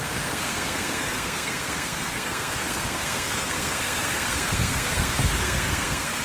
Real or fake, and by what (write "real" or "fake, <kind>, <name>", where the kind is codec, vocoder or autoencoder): fake, codec, SNAC